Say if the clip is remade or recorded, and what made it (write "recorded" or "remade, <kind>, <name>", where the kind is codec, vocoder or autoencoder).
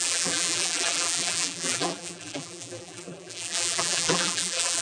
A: remade, vocoder, BigVGAN v2